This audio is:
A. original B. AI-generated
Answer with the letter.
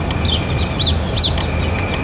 A